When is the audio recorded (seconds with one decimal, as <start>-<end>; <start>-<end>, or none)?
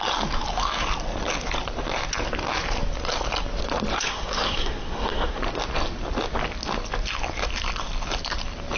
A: 0.0-3.9; 5.4-8.8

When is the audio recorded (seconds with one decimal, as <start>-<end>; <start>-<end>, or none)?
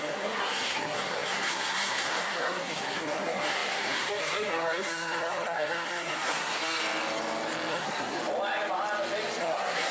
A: 6.8-7.7; 8.2-9.4